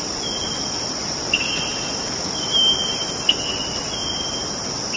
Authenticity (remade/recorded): recorded